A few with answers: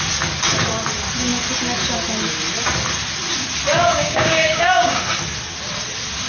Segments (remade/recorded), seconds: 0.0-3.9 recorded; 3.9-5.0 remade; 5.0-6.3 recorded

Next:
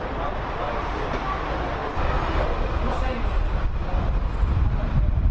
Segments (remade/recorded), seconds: 0.0-5.3 recorded

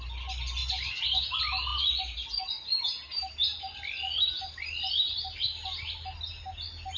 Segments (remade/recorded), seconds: 0.0-7.0 recorded

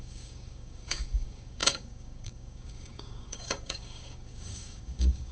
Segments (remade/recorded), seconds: 0.0-5.3 remade

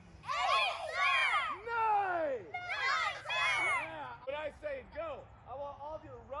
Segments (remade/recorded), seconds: 0.0-6.4 recorded

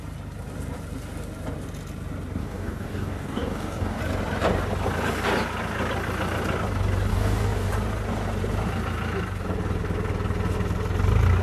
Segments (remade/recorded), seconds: 0.0-2.4 recorded; 2.4-4.0 remade; 4.0-7.1 recorded; 7.1-7.7 remade; 7.7-11.4 recorded

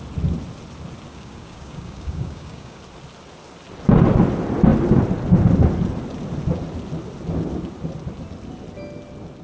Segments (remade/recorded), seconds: 0.0-1.1 recorded; 1.1-2.8 remade; 2.8-9.4 recorded